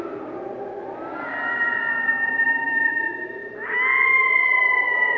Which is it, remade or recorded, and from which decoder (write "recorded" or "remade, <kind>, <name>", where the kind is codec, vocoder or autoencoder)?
recorded